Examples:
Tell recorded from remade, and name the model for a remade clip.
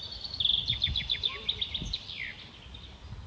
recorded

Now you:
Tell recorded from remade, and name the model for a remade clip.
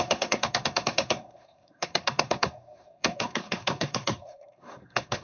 remade, codec, SNAC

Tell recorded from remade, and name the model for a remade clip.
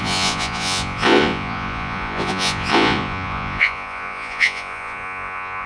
remade, vocoder, Vocos